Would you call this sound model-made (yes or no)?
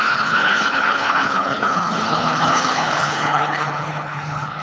yes